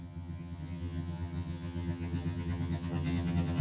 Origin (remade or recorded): remade